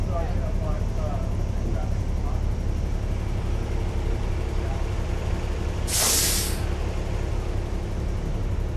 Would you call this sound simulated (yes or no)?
no